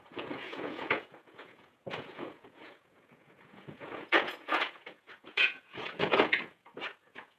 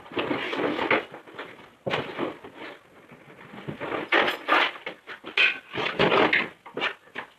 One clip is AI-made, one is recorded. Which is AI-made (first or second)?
first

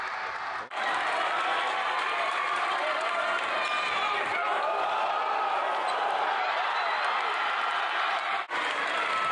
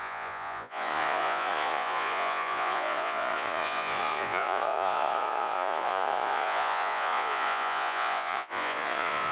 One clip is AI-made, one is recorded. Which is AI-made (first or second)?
second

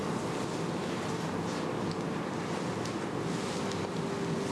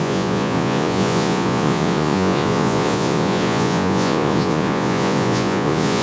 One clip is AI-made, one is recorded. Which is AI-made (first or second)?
second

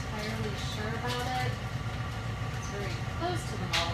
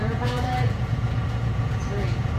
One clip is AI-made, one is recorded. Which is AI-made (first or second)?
second